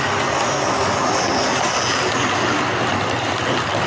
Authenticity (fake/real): real